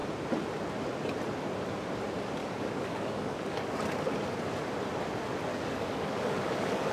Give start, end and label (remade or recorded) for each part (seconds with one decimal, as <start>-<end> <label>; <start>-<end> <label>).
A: 0.0-2.4 recorded; 2.4-3.8 remade; 3.8-5.5 recorded; 5.5-6.9 remade